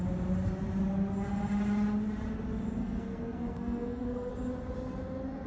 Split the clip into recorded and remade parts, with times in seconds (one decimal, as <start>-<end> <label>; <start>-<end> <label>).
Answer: 0.0-2.8 recorded; 2.8-4.3 remade; 4.3-5.5 recorded